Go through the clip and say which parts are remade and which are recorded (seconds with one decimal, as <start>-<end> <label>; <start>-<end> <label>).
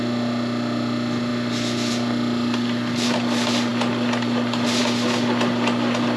0.0-6.2 recorded